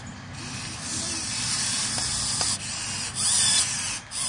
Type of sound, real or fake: real